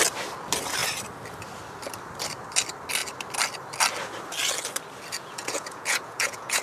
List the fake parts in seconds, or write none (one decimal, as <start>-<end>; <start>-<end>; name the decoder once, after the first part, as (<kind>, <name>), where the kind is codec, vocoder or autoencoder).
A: 5.4-6.6 (vocoder, Vocos)